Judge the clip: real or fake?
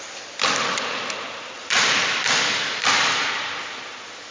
fake